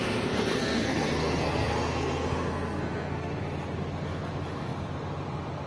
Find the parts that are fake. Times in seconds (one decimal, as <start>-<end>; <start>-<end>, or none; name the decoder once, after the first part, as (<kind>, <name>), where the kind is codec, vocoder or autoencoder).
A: 0.0-3.4 (codec, SNAC)